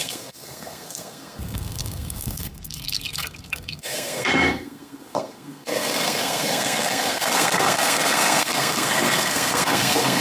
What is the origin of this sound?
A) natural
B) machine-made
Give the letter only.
B